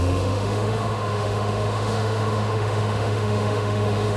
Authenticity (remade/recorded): remade